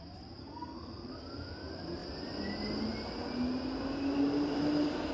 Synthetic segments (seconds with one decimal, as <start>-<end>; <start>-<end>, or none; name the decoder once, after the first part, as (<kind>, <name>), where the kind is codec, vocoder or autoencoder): 0.4-1.1 (codec, SNAC)